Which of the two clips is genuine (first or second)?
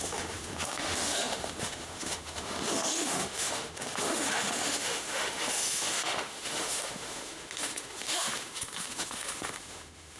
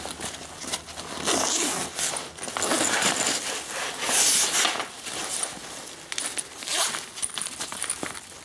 second